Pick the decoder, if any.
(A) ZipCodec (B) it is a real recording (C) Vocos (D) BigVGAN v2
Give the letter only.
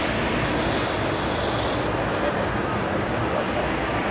B